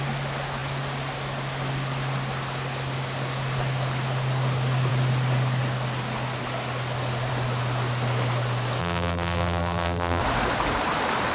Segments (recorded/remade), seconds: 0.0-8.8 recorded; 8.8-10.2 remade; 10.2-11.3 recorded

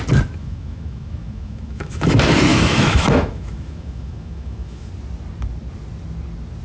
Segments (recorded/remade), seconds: 0.0-0.4 recorded; 0.4-2.1 remade; 2.1-2.5 recorded; 2.5-4.9 remade; 4.9-6.6 recorded

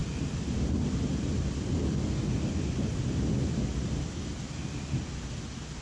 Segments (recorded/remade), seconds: 0.0-5.8 recorded

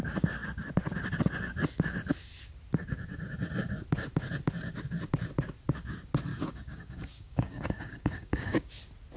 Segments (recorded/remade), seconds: 0.0-6.3 recorded; 6.3-8.7 remade; 8.7-9.2 recorded

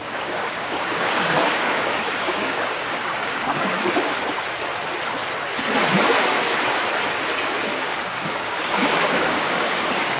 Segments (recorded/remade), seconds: 0.0-4.1 remade; 4.1-7.7 recorded; 7.7-10.2 remade

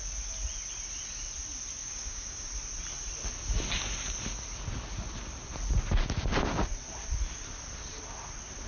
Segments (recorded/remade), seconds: 0.0-1.8 recorded; 1.8-2.5 remade; 2.5-8.7 recorded

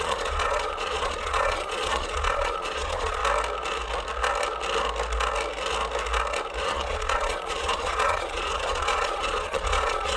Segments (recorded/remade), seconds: 0.0-3.2 remade; 3.2-6.6 recorded; 6.6-10.2 remade

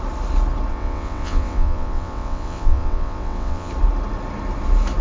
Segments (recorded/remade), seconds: 0.0-0.7 recorded; 0.7-3.7 remade; 3.7-5.0 recorded